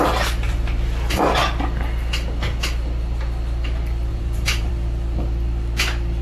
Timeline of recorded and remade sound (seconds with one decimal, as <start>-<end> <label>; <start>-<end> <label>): 0.0-4.1 recorded; 4.1-4.7 remade; 4.7-6.2 recorded